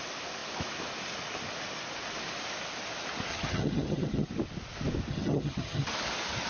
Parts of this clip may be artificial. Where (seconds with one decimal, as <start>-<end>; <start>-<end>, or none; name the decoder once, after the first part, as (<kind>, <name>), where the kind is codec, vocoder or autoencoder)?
3.3-4.3 (vocoder, HiFi-GAN); 5.1-5.9